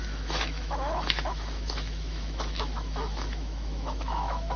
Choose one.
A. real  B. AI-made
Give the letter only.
B